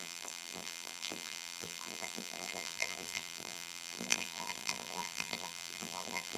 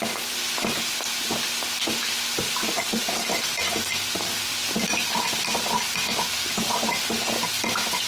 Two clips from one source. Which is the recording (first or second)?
second